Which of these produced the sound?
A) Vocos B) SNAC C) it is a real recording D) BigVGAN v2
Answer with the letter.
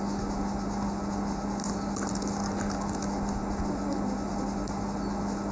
C